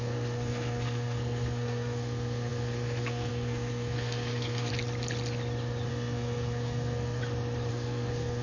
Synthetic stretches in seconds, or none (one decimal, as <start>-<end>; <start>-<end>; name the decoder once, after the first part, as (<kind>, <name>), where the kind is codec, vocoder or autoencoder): 0.0-4.7 (codec, SNAC); 5.9-7.2; 7.7-8.4